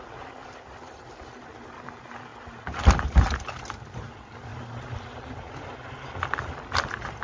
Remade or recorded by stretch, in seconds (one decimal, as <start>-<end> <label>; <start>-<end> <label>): 0.0-0.4 recorded; 0.4-1.4 remade; 1.4-4.5 recorded; 4.5-5.5 remade; 5.5-7.2 recorded